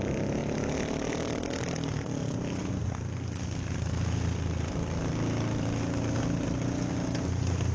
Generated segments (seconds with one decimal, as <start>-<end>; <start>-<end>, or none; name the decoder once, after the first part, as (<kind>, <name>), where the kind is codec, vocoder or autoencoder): none